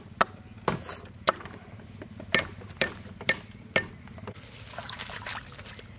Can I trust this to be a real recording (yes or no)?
yes